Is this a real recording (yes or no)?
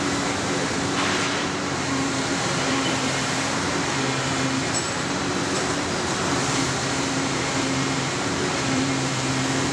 no